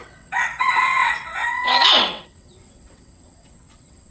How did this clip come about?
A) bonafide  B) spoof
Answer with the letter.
B